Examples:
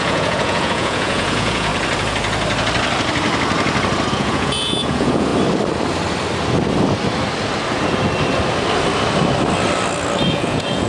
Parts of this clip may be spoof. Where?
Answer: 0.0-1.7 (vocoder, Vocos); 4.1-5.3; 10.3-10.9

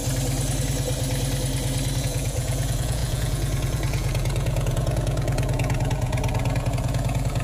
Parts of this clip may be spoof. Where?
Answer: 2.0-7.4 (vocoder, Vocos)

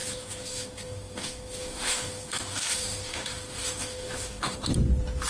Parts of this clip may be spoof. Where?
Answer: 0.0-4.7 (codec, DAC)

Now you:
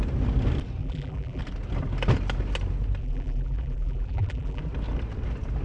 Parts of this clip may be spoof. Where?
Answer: 0.8-1.4 (vocoder, BigVGAN v2); 3.0-4.6